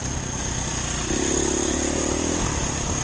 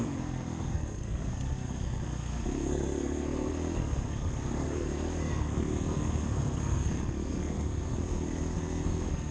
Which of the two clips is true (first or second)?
first